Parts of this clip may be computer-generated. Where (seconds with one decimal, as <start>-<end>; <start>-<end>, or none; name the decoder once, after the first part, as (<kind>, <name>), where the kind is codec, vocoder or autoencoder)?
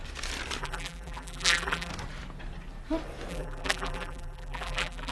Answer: 0.6-1.9 (vocoder, BigVGAN v2); 3.3-5.1